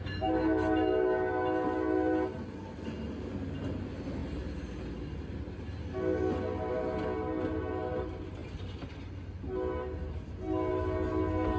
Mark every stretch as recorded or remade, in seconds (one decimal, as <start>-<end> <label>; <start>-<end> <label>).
0.0-11.6 recorded